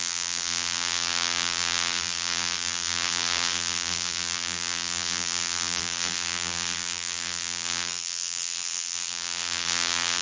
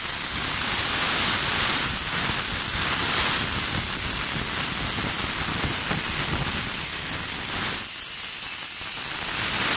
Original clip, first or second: second